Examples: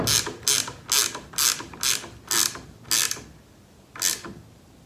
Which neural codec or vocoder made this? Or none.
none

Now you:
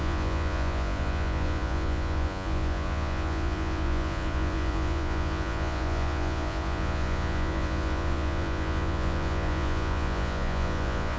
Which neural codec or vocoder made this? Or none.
vocoder, Vocos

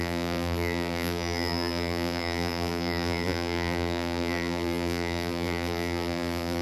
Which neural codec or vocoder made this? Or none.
vocoder, BigVGAN v2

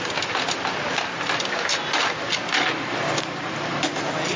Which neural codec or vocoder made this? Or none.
none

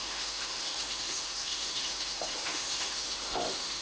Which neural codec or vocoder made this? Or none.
autoencoder, DAC-VAE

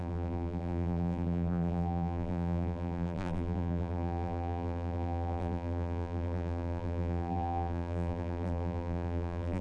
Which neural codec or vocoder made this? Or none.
vocoder, BigVGAN v2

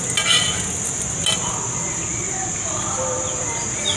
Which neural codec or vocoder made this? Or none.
none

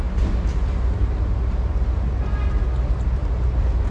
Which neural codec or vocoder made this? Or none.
none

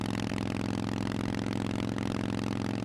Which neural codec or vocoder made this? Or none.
none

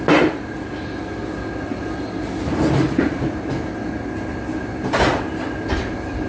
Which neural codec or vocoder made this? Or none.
none